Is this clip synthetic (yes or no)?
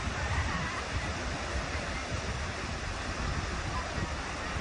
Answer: no